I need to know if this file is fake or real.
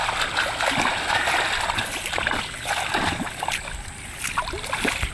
real